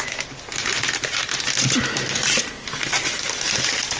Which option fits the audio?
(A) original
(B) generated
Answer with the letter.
A